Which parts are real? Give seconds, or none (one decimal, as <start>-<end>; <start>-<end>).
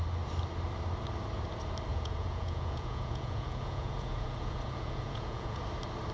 0.0-1.9; 5.6-6.1